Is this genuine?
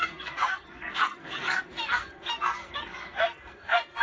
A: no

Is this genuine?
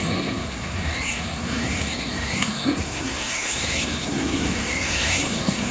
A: no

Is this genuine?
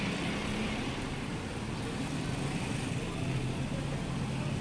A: yes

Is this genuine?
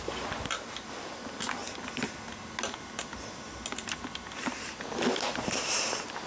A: yes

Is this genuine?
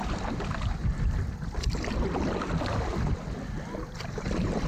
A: yes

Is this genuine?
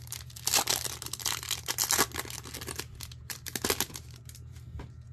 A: yes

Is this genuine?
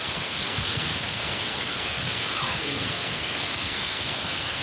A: no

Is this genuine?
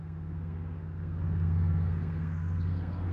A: no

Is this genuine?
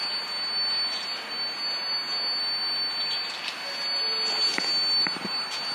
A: yes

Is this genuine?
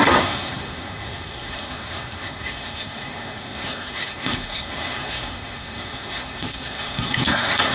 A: no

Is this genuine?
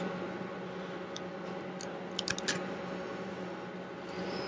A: yes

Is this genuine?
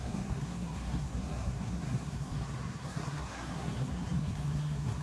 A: no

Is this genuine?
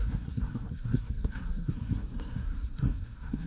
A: no